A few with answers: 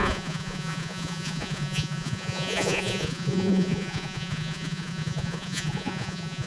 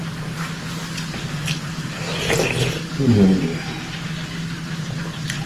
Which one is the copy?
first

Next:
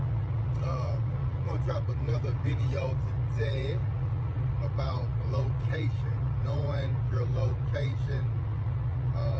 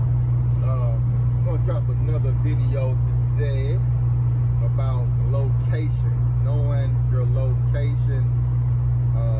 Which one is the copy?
first